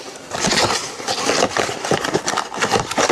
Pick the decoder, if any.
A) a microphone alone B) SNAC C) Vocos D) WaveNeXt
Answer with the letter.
A